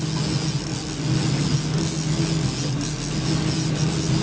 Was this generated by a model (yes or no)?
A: no